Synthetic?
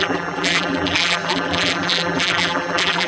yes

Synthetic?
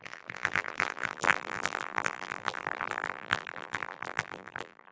yes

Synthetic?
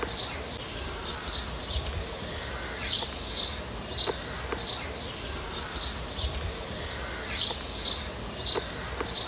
no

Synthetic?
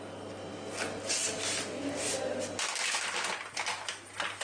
no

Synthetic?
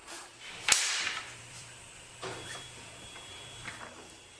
yes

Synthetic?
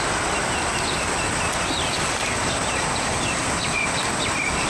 yes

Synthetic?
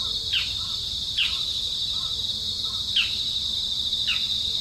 no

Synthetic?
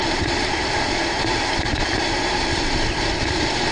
yes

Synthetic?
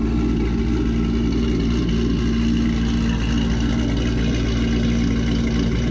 no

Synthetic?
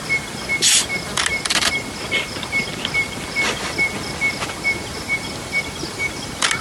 no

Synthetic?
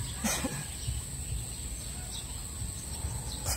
no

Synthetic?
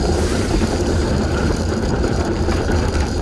yes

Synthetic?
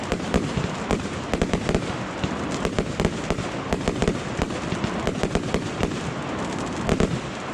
no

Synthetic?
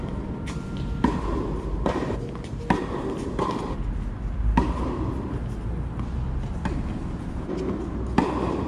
no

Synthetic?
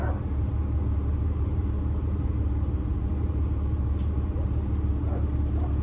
yes